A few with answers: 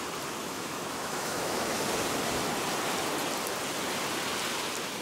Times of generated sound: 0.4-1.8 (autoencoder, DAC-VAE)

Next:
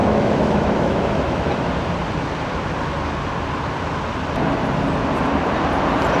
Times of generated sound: 0.0-1.5 (autoencoder, DAC-VAE)